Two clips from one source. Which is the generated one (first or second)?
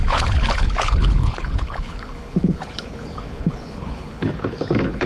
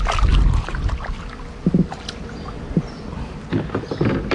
first